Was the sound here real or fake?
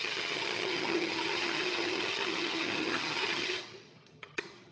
fake